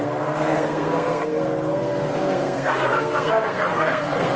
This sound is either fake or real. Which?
fake